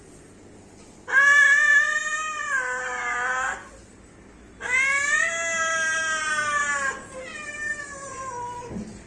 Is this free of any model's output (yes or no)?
yes